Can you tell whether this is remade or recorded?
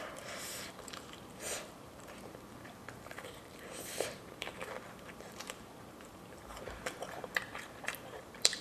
remade